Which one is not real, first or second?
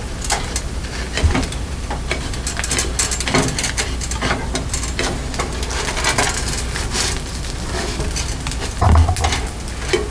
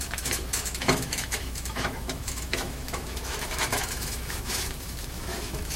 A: second